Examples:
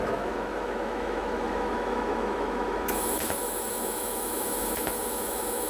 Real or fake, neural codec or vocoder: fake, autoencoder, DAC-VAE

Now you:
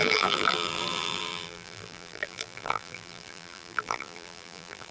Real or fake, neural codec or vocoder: fake, vocoder, BigVGAN v2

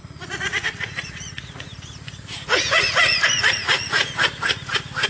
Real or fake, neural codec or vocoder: fake, vocoder, Vocos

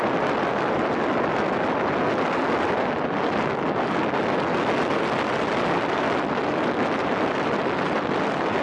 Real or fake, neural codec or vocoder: real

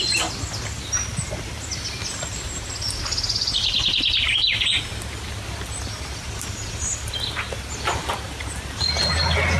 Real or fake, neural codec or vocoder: real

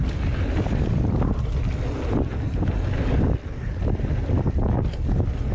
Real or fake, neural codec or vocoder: real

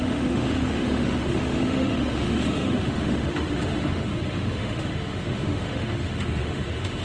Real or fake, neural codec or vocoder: fake, autoencoder, DAC-VAE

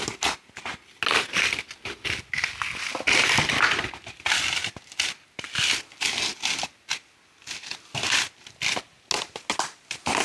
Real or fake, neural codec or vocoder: real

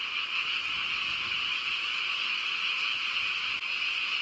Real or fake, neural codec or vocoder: real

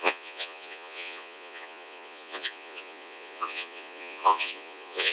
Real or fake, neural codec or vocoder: fake, vocoder, Vocos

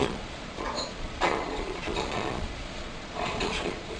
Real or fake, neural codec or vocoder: fake, vocoder, Vocos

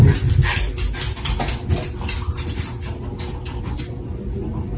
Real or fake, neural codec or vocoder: real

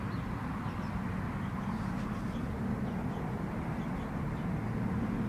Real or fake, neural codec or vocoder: real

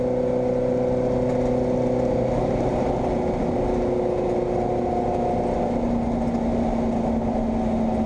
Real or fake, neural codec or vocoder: real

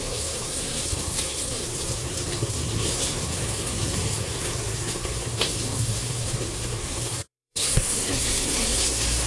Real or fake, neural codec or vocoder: fake, codec, SNAC